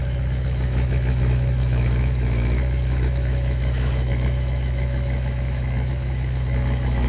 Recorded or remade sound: remade